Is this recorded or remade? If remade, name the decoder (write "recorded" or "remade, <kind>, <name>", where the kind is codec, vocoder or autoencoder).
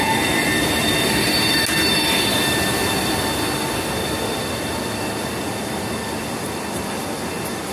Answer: recorded